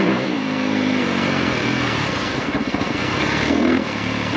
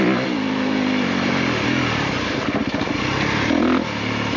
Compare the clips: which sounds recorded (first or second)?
second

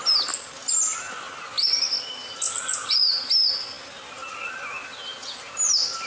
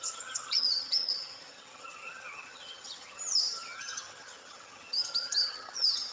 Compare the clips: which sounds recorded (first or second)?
first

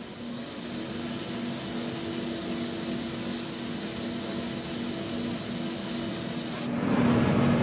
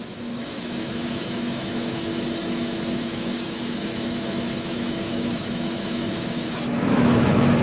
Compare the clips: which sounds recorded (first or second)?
first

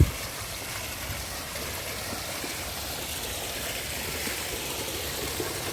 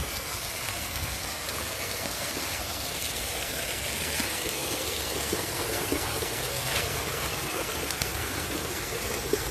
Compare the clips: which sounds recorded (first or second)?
first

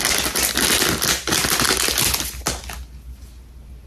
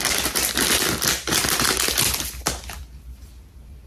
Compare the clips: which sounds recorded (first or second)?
first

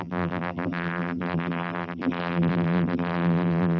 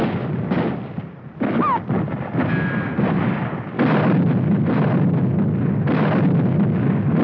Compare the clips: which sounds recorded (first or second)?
second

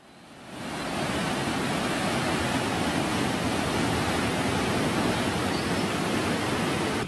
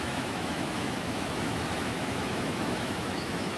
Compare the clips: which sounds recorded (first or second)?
first